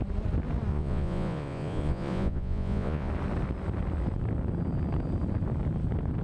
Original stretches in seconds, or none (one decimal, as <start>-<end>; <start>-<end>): 0.0-0.7; 3.1-6.2